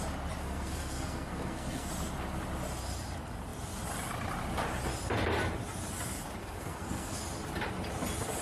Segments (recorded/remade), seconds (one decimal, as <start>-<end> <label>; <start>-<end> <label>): 0.0-0.4 recorded; 0.4-1.9 remade; 1.9-6.4 recorded; 6.4-7.2 remade; 7.2-8.4 recorded